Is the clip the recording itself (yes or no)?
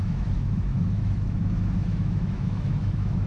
no